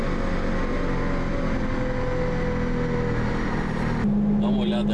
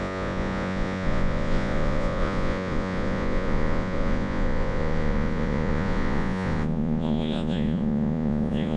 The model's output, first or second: second